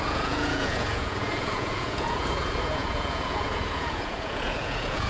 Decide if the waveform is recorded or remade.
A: remade